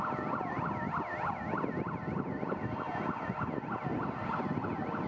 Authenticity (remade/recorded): recorded